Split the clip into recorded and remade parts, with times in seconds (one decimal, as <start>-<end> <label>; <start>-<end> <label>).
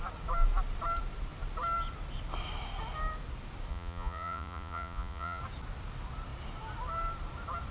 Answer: 0.0-3.7 recorded; 3.7-5.4 remade; 5.4-7.7 recorded